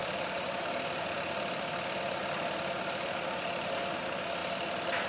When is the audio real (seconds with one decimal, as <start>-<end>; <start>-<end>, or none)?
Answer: 0.0-5.1